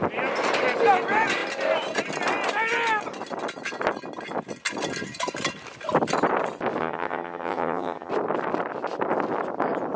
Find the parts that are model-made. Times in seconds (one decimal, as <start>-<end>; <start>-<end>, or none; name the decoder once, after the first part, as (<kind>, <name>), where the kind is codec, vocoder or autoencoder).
6.8-8.1 (vocoder, HiFi-GAN)